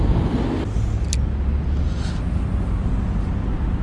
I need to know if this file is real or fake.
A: real